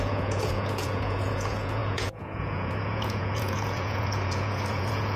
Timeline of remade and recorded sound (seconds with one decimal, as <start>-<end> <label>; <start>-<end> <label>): 0.0-5.2 remade